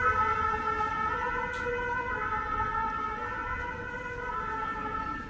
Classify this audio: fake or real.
real